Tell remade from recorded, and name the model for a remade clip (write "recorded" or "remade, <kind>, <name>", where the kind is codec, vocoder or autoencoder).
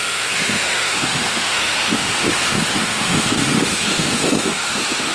remade, autoencoder, DAC-VAE